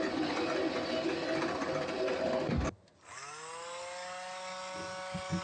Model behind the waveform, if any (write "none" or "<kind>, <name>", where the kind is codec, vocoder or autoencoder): none